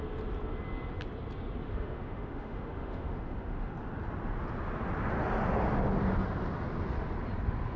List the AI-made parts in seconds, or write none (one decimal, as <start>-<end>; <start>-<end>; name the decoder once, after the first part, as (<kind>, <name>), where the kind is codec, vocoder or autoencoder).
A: 1.7-3.7 (autoencoder, DAC-VAE)

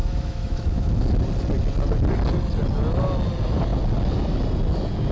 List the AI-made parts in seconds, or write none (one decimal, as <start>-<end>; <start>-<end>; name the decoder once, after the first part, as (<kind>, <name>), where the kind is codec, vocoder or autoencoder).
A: 0.0-1.0 (autoencoder, DAC-VAE)

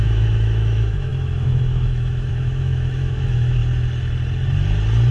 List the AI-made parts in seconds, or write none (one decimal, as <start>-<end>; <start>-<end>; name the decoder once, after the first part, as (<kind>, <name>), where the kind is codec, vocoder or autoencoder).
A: 0.0-3.6 (autoencoder, DAC-VAE)